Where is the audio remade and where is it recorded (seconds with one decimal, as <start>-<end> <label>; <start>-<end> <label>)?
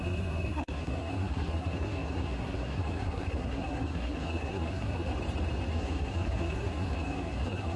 0.0-5.1 remade; 5.1-5.7 recorded; 5.7-7.8 remade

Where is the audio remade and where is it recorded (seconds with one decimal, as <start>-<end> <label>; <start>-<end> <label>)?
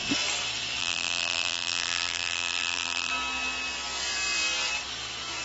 0.0-0.8 recorded; 0.8-3.1 remade; 3.1-5.4 recorded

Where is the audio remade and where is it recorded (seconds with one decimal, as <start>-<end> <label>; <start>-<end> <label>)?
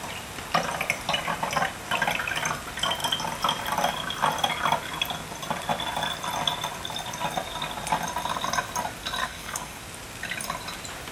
0.0-9.2 recorded; 9.2-9.8 remade; 9.8-11.1 recorded